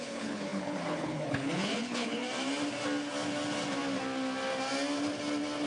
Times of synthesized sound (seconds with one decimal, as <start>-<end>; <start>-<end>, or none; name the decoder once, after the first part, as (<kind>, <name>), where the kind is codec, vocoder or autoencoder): 0.0-2.2 (codec, HILCodec)